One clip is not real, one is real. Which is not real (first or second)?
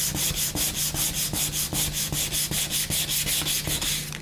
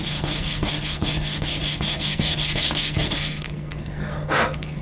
second